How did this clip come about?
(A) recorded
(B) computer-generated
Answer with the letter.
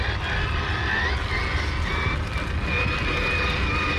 A